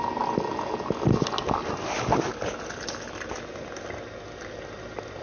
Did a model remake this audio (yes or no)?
no